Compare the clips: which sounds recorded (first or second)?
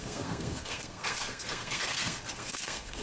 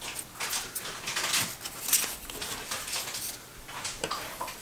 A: second